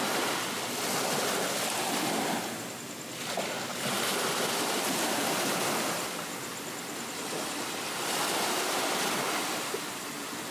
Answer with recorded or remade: recorded